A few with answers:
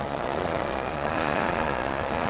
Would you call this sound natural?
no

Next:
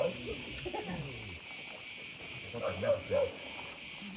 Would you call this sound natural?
yes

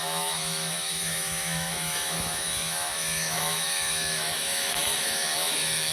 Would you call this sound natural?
no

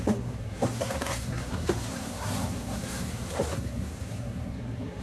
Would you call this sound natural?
no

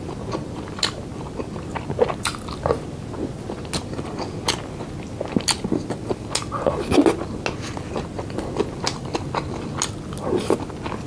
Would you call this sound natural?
yes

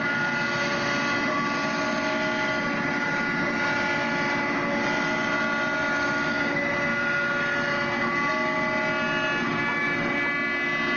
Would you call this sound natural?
yes